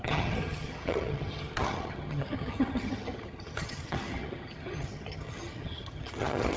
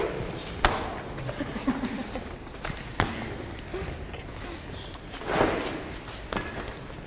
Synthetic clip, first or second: first